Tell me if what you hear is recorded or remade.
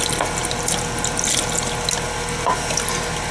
recorded